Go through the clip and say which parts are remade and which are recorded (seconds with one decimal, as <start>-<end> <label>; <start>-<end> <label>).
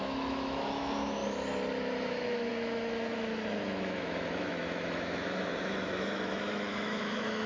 0.0-1.2 remade; 1.2-2.0 recorded; 2.0-7.5 remade